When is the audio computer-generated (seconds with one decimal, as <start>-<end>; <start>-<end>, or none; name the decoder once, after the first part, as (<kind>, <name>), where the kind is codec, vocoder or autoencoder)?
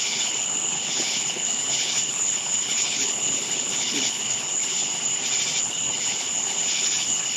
0.0-4.9 (codec, HILCodec); 5.6-7.4